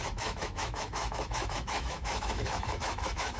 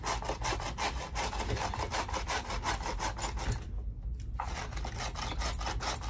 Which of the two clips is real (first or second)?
second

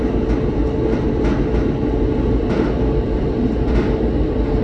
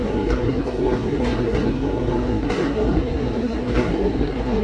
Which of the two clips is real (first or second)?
first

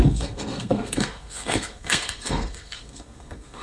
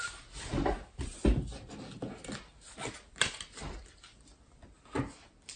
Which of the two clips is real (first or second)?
second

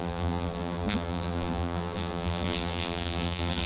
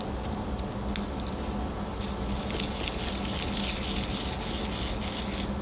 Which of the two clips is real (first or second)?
second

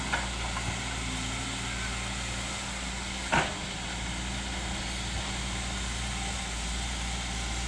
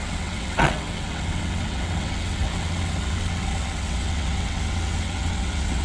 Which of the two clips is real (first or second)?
first